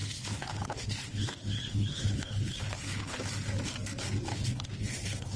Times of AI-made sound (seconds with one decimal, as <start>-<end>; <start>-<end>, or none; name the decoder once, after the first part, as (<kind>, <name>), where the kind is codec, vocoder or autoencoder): 0.0-3.2 (codec, HILCodec); 4.3-5.4